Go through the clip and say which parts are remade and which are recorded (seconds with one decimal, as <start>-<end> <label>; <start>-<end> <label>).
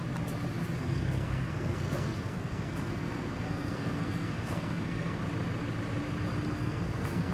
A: 0.0-0.8 recorded; 0.8-5.2 remade; 5.2-6.6 recorded; 6.6-7.3 remade